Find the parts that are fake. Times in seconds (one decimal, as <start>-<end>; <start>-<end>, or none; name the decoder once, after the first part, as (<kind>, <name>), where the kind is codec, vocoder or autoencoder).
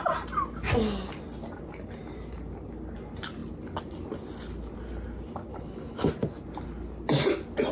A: 5.5-6.1 (codec, HILCodec)